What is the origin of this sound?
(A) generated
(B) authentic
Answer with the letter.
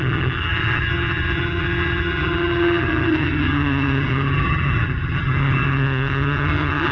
A